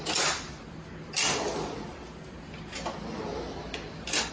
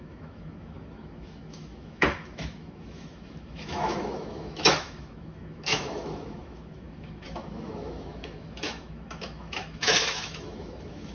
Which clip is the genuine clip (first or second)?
first